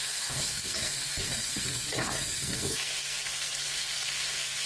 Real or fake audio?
fake